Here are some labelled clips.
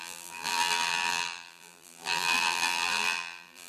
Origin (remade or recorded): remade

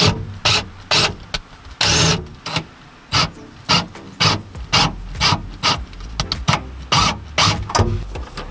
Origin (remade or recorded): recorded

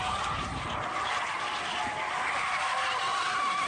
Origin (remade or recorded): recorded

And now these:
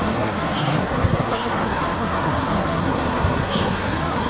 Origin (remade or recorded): remade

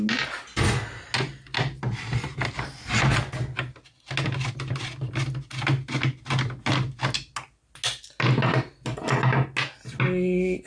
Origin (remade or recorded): recorded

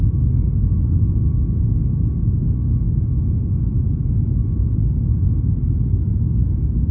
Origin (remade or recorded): recorded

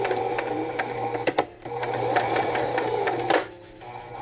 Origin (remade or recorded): remade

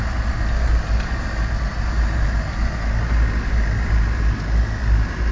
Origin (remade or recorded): recorded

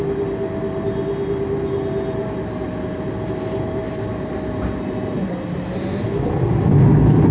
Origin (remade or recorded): remade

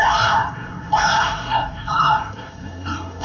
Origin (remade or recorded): remade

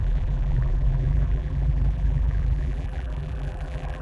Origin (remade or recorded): remade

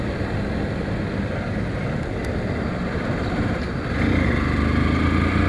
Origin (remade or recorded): recorded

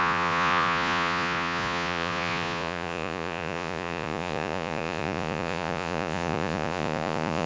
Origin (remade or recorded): remade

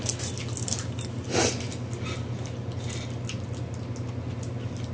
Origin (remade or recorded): recorded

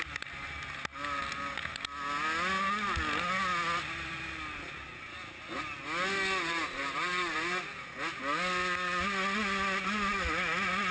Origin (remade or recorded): recorded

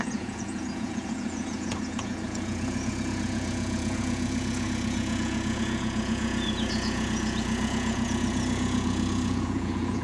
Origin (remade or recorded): remade